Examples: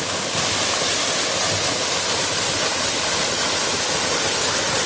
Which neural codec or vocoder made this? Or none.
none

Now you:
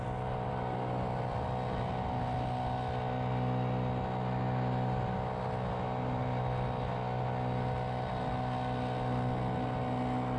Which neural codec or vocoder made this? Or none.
none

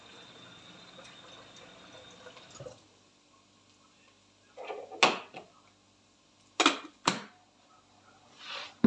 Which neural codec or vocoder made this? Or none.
none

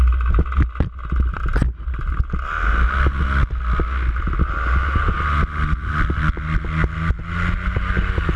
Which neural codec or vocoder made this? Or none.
none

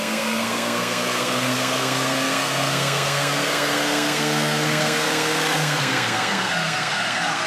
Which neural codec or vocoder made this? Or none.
codec, SNAC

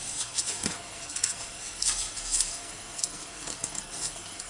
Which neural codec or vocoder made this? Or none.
codec, SNAC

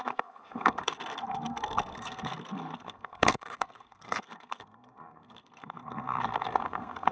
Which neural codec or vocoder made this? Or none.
codec, SNAC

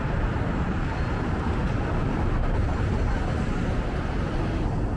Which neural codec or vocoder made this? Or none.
none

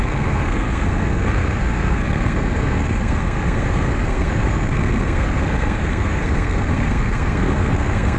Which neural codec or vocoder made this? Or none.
codec, SNAC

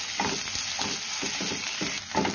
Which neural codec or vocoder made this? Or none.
none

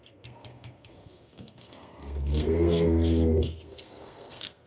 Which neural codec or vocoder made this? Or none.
codec, SNAC